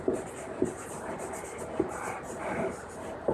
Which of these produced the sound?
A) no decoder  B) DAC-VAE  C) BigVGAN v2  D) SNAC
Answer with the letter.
C